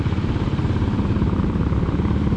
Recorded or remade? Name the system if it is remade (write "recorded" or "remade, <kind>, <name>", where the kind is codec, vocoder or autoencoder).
remade, vocoder, BigVGAN v2